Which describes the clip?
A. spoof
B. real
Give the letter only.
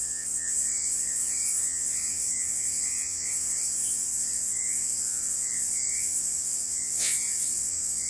A